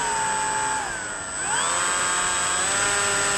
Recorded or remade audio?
recorded